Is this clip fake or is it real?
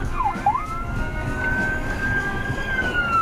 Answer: fake